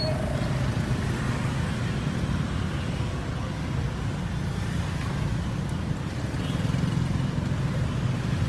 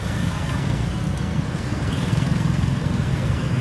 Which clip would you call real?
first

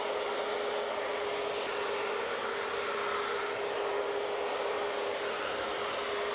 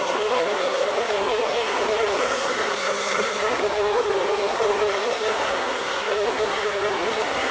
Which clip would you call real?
first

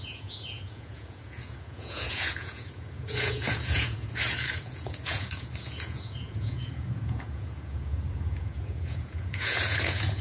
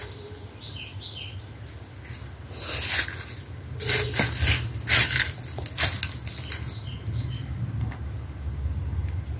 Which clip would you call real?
second